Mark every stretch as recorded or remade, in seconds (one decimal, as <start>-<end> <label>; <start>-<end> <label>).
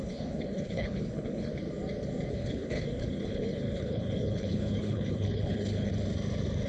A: 0.0-1.5 remade; 1.5-2.3 recorded; 2.3-5.9 remade; 5.9-6.7 recorded